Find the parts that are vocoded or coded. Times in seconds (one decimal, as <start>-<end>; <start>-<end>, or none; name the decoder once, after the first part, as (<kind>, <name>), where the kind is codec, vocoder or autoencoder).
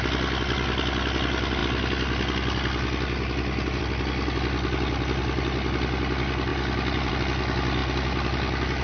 none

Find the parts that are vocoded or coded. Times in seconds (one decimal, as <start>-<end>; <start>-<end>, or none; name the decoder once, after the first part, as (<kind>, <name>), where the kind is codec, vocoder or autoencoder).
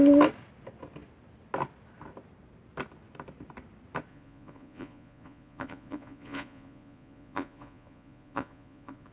4.1-9.1 (vocoder, Vocos)